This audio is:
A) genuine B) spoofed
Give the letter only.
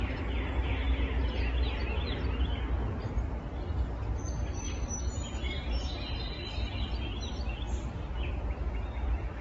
A